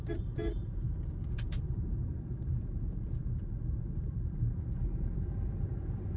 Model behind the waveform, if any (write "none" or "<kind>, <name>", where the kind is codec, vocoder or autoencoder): vocoder, BigVGAN v2